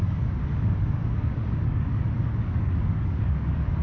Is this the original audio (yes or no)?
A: no